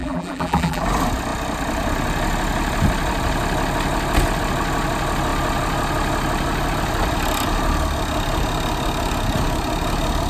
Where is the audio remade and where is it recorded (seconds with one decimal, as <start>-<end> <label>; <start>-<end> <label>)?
0.0-0.8 remade; 0.8-10.3 recorded